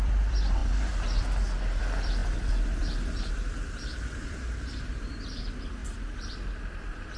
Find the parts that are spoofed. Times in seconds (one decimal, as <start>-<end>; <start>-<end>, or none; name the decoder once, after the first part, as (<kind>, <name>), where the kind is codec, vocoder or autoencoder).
0.0-0.6 (vocoder, BigVGAN v2); 1.8-7.2